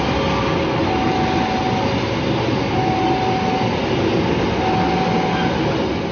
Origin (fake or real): real